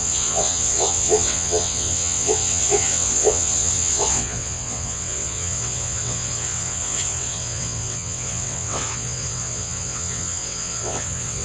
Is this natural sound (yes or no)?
no